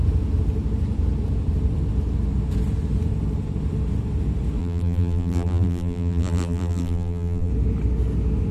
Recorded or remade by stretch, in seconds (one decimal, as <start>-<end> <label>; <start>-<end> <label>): 0.0-4.6 recorded; 4.6-7.5 remade; 7.5-8.5 recorded